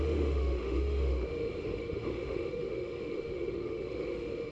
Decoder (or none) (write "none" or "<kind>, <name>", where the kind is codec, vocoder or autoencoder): autoencoder, DAC-VAE